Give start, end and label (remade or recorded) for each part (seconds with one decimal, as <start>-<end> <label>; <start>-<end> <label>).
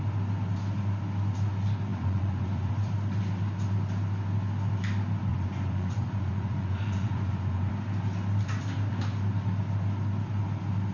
0.0-1.9 recorded; 1.9-2.7 remade; 2.7-5.3 recorded; 5.3-7.7 remade; 7.7-10.9 recorded